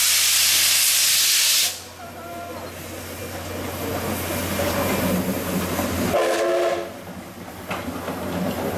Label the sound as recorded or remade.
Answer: recorded